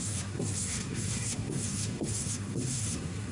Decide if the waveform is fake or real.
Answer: fake